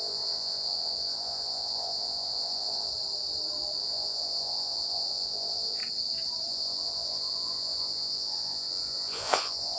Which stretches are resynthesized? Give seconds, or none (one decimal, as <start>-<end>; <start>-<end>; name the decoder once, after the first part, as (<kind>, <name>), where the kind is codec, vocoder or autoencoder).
0.0-2.9 (vocoder, Vocos); 3.8-5.8; 6.5-9.8